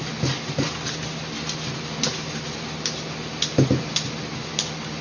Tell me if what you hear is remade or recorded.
recorded